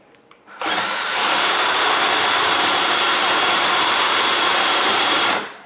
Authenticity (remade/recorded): remade